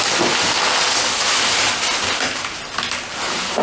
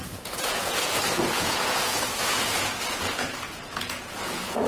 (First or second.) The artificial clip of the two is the second